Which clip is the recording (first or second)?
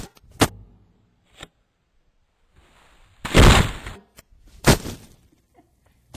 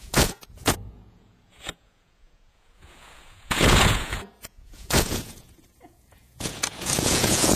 first